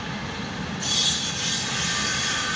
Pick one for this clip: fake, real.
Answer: real